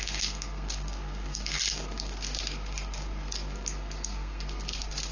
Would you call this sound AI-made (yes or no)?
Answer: yes